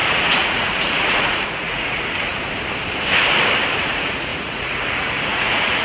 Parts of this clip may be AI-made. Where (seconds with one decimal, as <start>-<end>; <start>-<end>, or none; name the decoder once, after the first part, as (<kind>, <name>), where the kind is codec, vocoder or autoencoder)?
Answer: 0.0-2.3 (vocoder, Vocos); 3.8-5.8